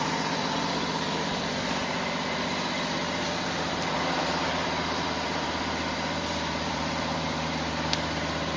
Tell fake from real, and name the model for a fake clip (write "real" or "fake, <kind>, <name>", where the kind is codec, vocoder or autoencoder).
fake, vocoder, BigVGAN v2